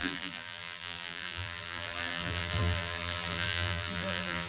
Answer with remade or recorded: remade